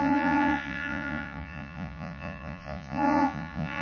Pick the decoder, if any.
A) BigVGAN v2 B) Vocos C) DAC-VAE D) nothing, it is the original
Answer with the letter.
B